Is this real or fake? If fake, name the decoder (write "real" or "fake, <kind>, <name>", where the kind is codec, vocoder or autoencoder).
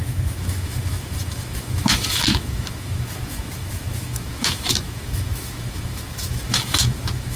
fake, autoencoder, DAC-VAE